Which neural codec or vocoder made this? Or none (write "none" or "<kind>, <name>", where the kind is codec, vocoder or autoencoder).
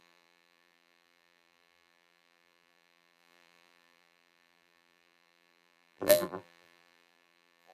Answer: vocoder, BigVGAN v2